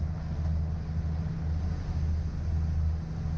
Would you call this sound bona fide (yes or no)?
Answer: yes